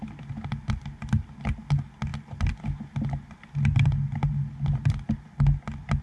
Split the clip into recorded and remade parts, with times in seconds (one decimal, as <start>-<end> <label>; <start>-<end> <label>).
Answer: 0.0-6.0 recorded